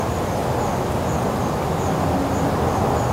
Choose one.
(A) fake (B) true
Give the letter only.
B